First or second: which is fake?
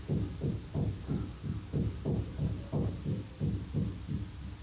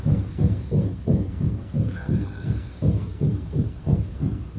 second